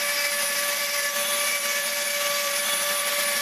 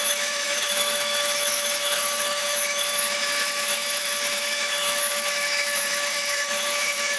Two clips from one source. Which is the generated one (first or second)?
second